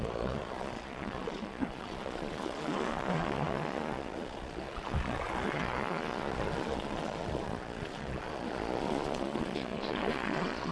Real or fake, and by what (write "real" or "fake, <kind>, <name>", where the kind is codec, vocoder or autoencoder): fake, vocoder, Vocos